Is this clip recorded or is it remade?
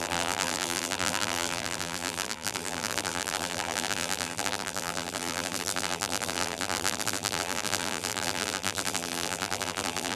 remade